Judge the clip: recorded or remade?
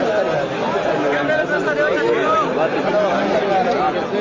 recorded